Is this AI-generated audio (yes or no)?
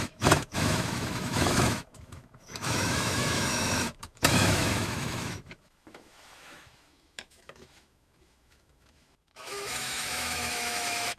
yes